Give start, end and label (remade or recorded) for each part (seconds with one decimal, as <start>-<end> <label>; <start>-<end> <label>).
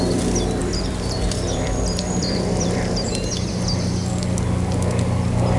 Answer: 0.0-0.6 recorded; 0.6-4.0 remade; 4.0-5.6 recorded